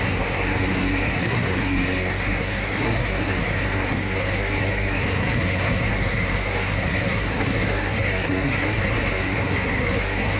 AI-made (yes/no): yes